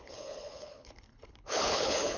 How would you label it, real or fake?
fake